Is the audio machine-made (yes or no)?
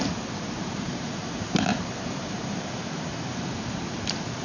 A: yes